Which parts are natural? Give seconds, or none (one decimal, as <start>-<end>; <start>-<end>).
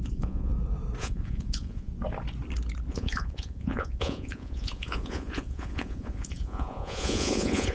0.5-1.0; 1.9-2.9